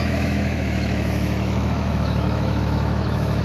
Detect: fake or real fake